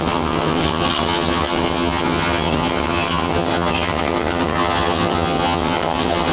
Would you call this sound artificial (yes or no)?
yes